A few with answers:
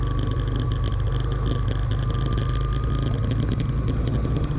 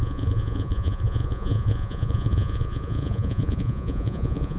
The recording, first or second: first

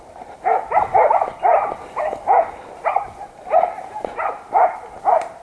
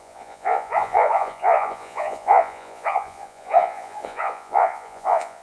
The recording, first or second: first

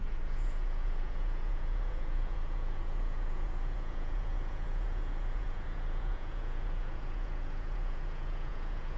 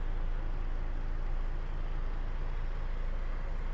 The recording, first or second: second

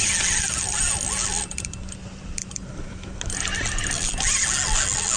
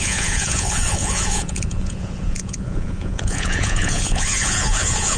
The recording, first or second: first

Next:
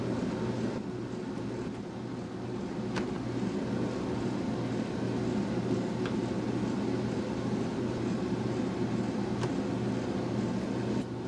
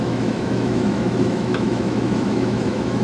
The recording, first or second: first